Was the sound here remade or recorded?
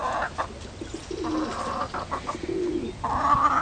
recorded